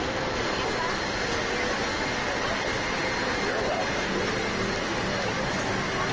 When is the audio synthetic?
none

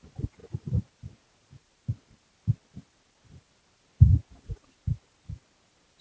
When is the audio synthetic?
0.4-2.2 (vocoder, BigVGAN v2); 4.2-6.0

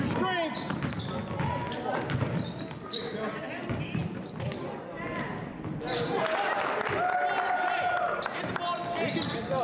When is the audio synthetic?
none

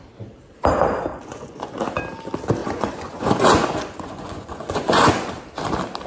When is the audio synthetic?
1.1-1.7 (vocoder, Vocos); 2.6-5.3

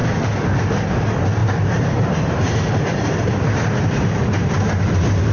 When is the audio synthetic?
1.4-4.6 (vocoder, BigVGAN v2)

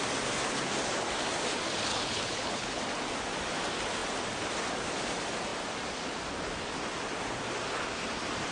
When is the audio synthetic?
1.9-2.8 (codec, HILCodec)

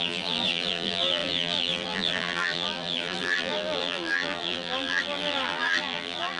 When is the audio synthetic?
0.0-6.4 (vocoder, BigVGAN v2)